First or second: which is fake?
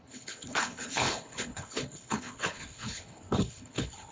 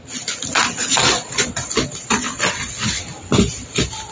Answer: first